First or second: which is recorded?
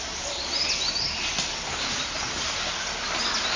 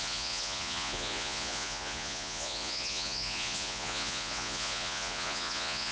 first